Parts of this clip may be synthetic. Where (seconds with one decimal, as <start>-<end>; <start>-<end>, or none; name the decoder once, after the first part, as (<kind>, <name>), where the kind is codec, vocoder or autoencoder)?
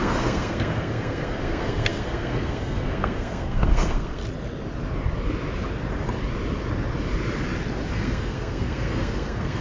0.0-4.2 (codec, SNAC); 7.9-9.6